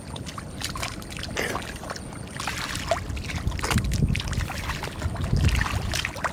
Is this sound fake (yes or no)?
no